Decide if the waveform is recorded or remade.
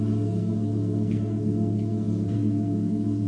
remade